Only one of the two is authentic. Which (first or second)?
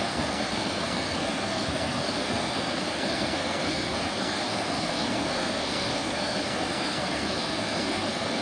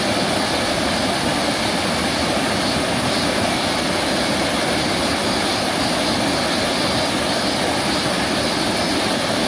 second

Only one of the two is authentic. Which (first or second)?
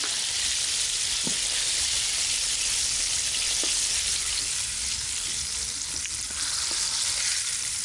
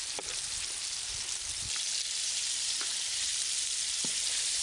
first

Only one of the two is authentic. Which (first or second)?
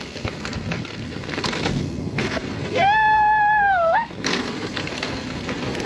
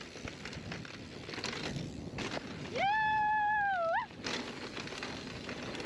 second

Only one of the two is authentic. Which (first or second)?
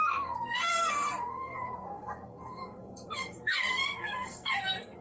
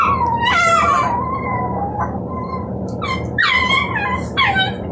second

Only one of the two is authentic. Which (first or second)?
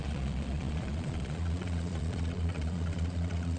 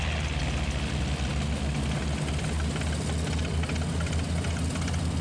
second